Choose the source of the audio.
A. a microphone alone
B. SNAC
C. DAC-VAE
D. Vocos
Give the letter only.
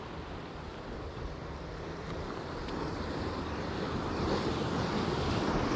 A